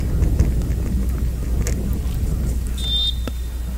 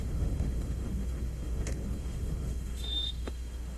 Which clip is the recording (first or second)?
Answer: first